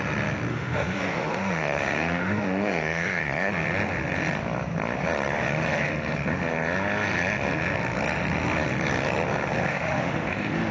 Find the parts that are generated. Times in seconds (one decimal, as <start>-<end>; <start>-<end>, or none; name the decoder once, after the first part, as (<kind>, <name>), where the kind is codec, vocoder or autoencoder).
0.5-3.5 (autoencoder, DAC-VAE); 9.7-10.7